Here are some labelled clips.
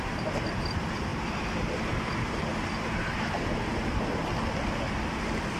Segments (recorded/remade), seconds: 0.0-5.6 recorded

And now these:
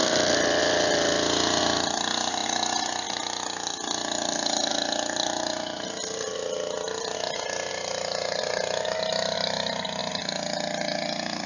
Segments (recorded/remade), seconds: 0.0-10.0 remade; 10.0-11.5 recorded

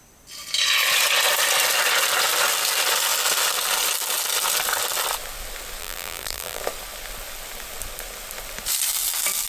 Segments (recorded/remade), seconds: 0.0-5.8 recorded; 5.8-6.6 remade; 6.6-9.5 recorded